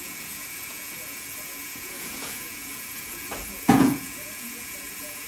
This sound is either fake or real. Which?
fake